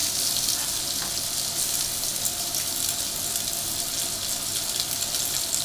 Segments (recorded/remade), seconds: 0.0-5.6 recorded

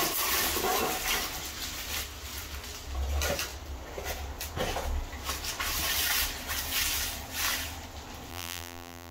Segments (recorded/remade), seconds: 0.0-8.3 recorded; 8.3-9.1 remade

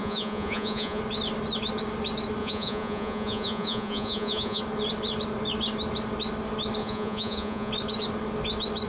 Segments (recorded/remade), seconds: 0.0-1.0 remade; 1.0-2.4 recorded; 2.4-4.6 remade; 4.6-6.8 recorded; 6.8-7.7 remade; 7.7-8.9 recorded

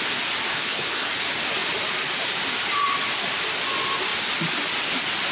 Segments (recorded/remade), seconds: 0.0-0.5 recorded; 0.5-1.1 remade; 1.1-5.3 recorded